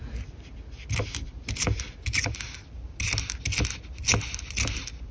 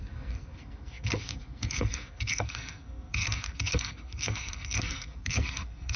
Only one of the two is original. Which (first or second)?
first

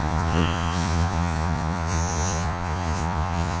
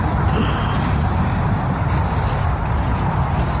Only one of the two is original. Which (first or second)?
second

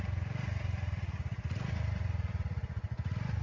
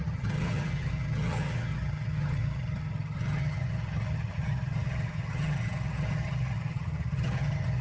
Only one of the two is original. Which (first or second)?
first